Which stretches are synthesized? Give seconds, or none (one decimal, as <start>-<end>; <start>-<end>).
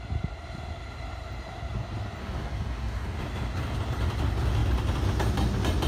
2.2-3.2